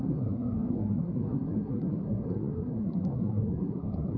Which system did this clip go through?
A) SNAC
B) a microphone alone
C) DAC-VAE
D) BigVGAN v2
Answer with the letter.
A